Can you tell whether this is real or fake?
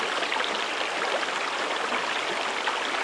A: real